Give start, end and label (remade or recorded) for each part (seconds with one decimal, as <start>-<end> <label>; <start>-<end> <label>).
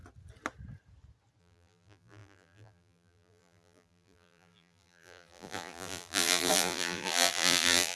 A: 0.0-1.4 recorded; 1.4-8.0 remade